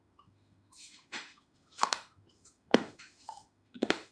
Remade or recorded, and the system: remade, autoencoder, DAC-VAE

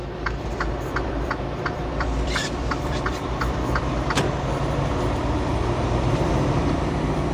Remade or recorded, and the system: remade, vocoder, BigVGAN v2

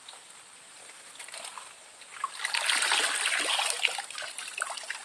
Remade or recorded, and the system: recorded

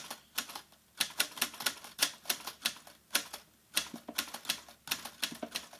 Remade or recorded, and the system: recorded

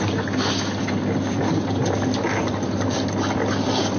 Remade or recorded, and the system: recorded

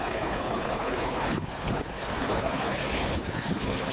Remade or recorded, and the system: remade, codec, HILCodec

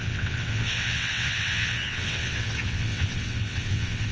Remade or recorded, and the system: remade, vocoder, WaveNeXt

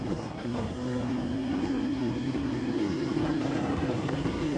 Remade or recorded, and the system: remade, codec, SNAC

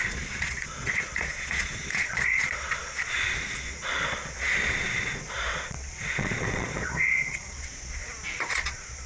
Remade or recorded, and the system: remade, vocoder, Vocos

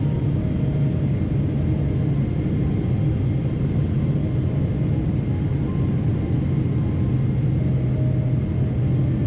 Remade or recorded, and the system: recorded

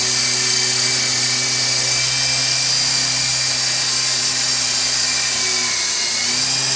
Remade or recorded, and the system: recorded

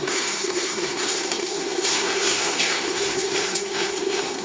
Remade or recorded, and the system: remade, codec, SNAC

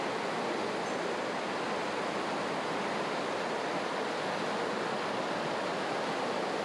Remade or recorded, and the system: recorded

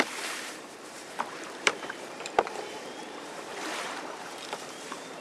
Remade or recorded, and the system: remade, vocoder, BigVGAN v2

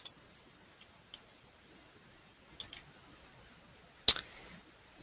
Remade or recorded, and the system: recorded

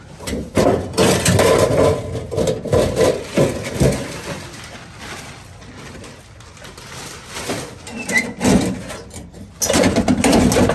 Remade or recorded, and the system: recorded